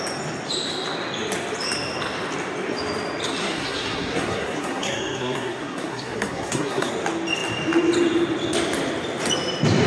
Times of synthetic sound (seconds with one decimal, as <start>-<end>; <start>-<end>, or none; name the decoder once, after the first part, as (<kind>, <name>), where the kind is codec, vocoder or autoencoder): 3.4-6.9 (codec, SNAC)